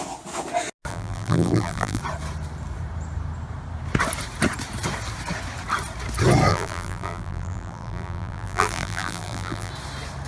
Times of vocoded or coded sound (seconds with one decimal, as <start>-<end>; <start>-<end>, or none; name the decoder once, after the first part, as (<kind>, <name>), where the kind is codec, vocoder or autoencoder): 0.9-2.0 (vocoder, BigVGAN v2); 6.5-9.7